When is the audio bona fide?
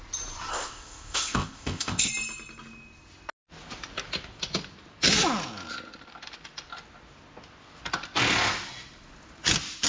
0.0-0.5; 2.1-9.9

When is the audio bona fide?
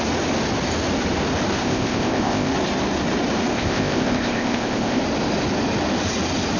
0.0-1.6; 2.5-3.5; 5.0-6.6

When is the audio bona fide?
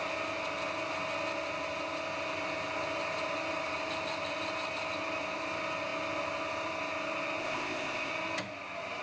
0.0-7.4; 8.1-9.0